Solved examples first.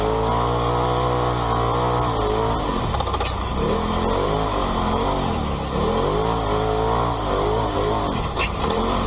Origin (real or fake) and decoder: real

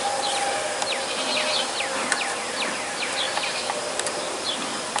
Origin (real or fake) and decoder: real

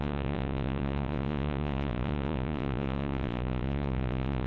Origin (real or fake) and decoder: fake, vocoder, Vocos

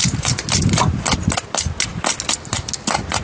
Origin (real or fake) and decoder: real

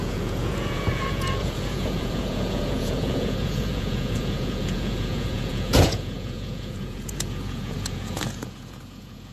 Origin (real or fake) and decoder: fake, vocoder, Vocos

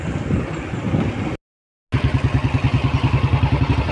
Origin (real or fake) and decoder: real